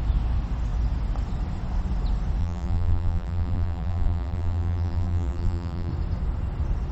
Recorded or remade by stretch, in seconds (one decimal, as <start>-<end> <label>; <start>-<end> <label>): 0.0-2.4 recorded; 2.4-5.9 remade; 5.9-6.9 recorded